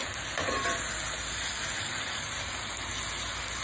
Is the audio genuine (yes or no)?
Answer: yes